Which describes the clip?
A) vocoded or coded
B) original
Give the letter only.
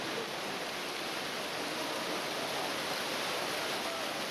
B